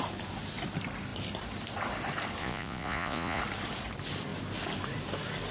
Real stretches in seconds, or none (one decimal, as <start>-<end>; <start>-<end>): 0.0-2.4; 3.4-5.5